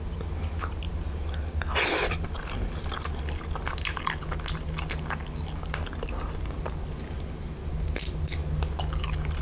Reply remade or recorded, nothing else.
recorded